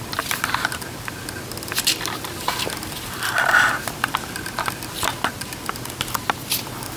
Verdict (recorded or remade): remade